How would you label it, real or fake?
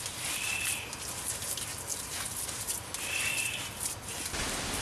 real